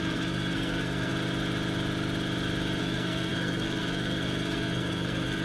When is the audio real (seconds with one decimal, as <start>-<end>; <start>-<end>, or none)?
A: 1.1-2.8